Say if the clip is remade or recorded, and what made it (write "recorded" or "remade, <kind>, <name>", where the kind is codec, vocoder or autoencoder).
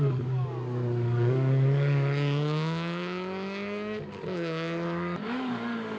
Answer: remade, codec, DAC